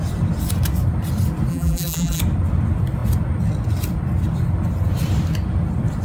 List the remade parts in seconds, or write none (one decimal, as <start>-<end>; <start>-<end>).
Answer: 1.5-2.2